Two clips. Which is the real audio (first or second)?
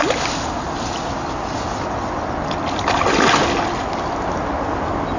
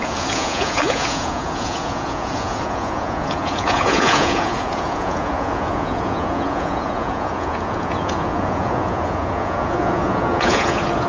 first